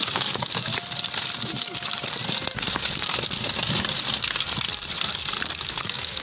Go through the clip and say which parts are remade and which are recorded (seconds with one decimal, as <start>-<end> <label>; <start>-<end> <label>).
0.0-0.7 remade; 0.7-1.6 recorded; 1.6-2.0 remade; 2.0-5.6 recorded; 5.6-6.2 remade